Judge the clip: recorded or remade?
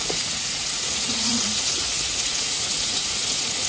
remade